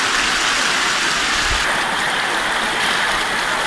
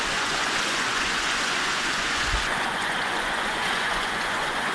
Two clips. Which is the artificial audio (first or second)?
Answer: second